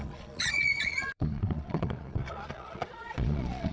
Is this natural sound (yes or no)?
no